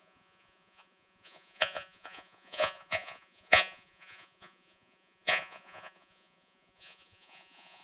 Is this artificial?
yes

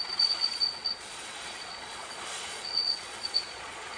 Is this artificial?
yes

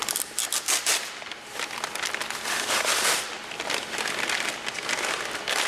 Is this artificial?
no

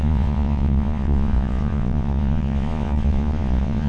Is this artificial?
yes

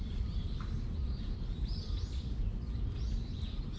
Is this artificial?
no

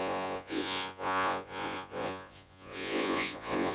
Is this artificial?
yes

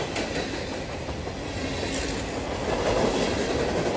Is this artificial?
no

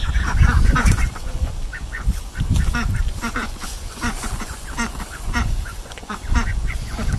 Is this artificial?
yes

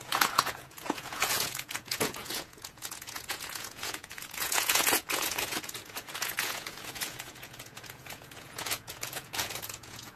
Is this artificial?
yes